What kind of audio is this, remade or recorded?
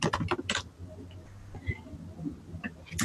recorded